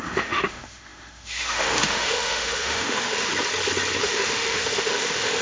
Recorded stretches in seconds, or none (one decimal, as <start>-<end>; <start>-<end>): 3.3-4.0